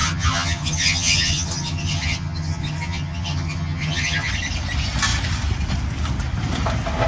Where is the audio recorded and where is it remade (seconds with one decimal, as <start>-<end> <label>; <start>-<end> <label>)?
0.0-4.3 remade; 4.3-7.1 recorded